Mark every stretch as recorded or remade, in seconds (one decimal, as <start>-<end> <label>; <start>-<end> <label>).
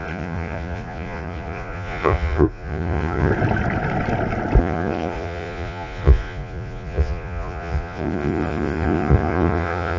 0.0-3.3 remade; 3.3-4.6 recorded; 4.6-10.0 remade